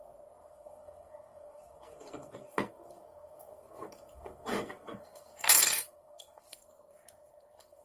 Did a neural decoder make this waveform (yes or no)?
yes